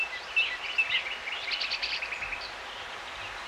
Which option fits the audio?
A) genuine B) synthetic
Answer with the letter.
A